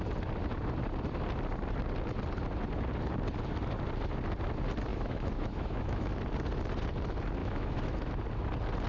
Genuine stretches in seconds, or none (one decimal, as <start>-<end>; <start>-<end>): 0.0-4.9; 6.1-7.4; 8.1-8.9